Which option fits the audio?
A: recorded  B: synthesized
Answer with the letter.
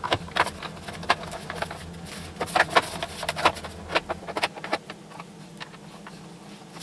A